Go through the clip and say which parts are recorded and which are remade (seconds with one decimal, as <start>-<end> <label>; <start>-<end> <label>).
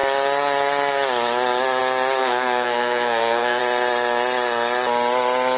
0.0-2.2 recorded; 2.2-3.6 remade; 3.6-5.6 recorded